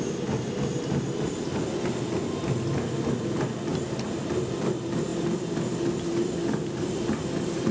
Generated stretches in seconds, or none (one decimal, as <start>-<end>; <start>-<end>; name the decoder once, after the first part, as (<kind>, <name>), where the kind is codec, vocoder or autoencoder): none